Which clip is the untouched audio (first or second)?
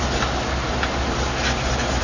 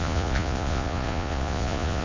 first